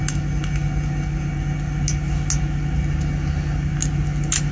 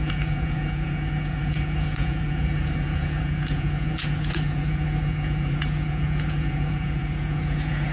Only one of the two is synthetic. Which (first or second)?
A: second